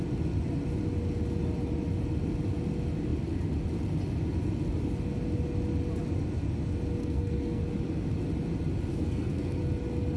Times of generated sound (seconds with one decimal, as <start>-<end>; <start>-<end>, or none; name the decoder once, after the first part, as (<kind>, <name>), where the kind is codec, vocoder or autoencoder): 7.0-7.6 (codec, SNAC); 8.9-9.6